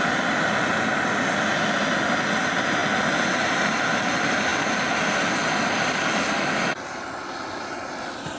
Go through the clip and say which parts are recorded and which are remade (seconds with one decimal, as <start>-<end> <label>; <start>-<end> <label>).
0.0-2.8 remade; 2.8-3.4 recorded; 3.4-4.5 remade; 4.5-7.5 recorded; 7.5-8.4 remade